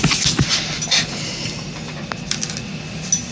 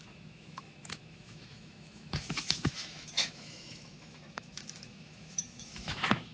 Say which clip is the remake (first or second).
second